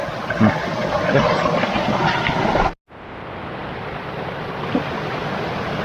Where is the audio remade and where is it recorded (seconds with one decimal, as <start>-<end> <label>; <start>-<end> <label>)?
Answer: 0.0-3.6 recorded; 3.6-5.3 remade; 5.3-5.8 recorded